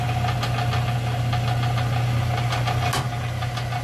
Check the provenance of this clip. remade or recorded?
recorded